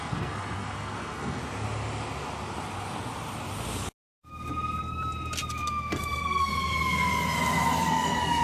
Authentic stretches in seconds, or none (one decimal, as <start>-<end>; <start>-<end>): 1.4-5.5; 6.5-7.8